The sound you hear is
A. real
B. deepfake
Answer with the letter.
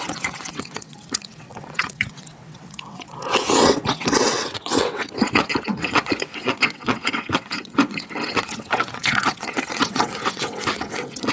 B